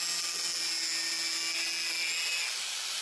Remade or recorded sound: recorded